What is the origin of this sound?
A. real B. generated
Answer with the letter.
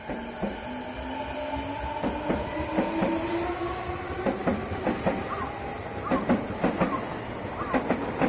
A